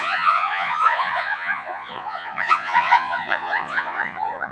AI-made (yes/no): yes